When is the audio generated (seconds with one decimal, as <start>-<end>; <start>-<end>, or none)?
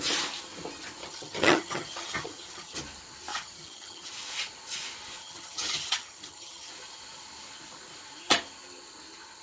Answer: 1.0-2.8; 3.3-4.1; 5.2-6.7